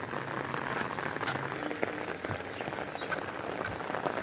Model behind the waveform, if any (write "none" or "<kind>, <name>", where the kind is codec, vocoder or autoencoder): none